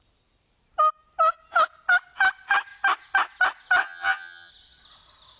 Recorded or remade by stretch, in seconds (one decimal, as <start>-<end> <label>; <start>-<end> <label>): 0.0-3.8 recorded; 3.8-4.5 remade; 4.5-5.4 recorded